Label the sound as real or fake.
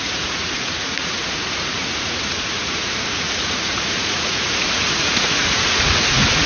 fake